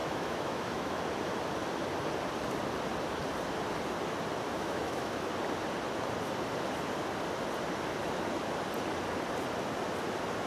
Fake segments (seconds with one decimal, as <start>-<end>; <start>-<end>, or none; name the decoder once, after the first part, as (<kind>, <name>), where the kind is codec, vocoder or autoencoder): 0.0-1.0 (autoencoder, DAC-VAE); 4.5-5.3